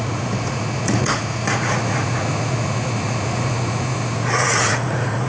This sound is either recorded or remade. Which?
remade